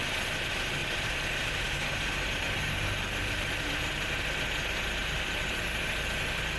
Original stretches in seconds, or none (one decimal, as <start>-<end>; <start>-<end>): 0.0-0.8; 4.1-5.0; 5.9-6.6